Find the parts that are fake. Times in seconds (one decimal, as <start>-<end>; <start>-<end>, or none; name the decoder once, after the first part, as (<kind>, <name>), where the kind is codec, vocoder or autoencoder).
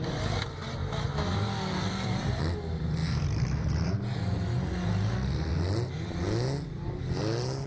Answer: 0.8-2.4 (vocoder, BigVGAN v2); 3.0-3.9